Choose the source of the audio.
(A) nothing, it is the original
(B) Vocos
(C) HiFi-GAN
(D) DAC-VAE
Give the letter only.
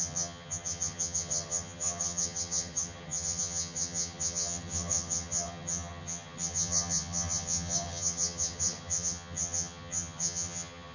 C